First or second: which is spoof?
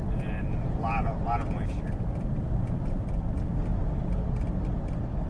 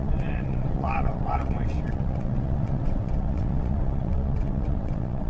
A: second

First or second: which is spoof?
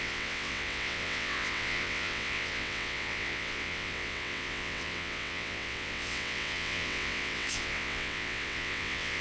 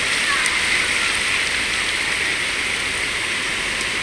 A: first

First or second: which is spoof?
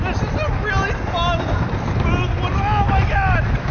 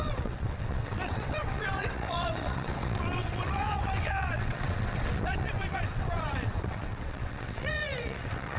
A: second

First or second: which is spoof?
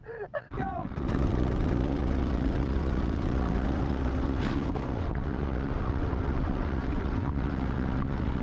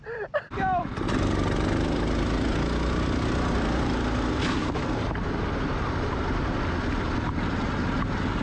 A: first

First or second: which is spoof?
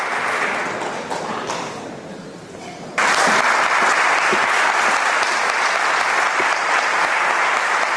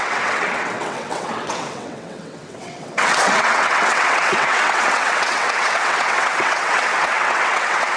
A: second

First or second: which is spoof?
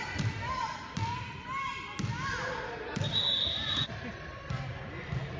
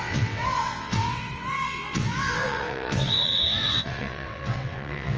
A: second